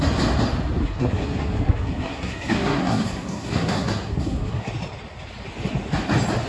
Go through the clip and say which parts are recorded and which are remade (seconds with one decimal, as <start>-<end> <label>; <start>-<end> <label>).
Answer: 0.0-0.8 recorded; 0.8-4.7 remade; 4.7-6.5 recorded